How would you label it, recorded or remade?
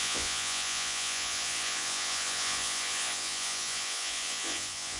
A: remade